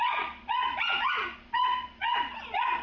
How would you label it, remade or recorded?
remade